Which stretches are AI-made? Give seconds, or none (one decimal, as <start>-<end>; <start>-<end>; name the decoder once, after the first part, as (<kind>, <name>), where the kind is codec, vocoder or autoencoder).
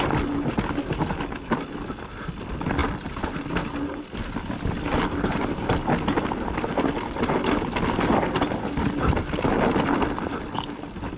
none